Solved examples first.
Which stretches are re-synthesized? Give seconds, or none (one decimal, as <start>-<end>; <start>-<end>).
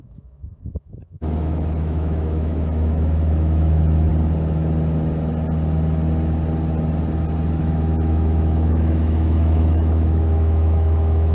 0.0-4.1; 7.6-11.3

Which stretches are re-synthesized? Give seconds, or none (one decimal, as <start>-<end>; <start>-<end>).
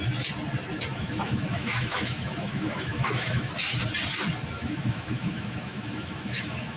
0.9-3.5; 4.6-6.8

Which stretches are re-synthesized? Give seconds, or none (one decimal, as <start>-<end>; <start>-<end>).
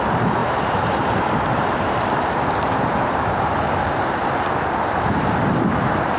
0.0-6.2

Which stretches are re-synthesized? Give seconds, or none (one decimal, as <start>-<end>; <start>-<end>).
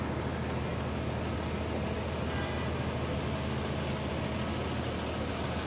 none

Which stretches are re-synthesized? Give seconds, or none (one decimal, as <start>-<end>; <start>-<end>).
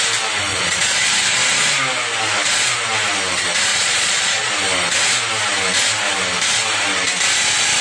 0.5-1.1; 3.7-4.5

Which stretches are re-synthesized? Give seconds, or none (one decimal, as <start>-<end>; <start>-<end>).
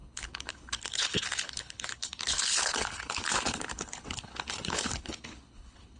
0.0-6.0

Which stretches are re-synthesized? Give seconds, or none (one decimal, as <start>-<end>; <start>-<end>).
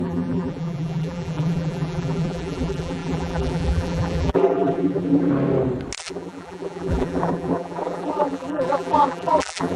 0.0-5.3; 6.0-9.8